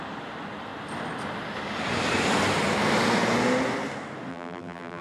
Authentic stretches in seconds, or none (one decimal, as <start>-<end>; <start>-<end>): 0.0-4.3